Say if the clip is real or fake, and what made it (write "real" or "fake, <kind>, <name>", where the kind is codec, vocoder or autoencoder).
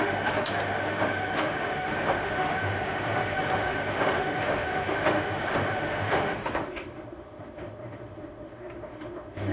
fake, autoencoder, DAC-VAE